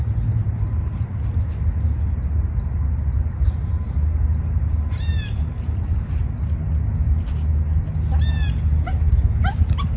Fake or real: real